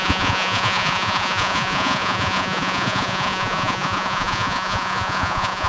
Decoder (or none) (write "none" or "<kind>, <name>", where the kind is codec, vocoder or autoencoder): vocoder, Vocos